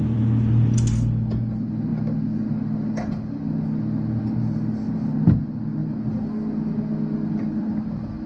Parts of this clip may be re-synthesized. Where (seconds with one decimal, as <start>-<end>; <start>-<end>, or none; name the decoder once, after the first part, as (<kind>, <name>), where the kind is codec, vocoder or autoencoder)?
none